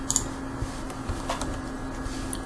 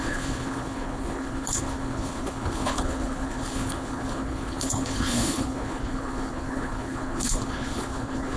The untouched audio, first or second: first